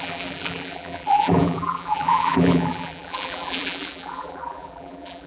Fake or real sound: fake